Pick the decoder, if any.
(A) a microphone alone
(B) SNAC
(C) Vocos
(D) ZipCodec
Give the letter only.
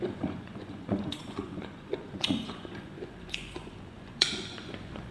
C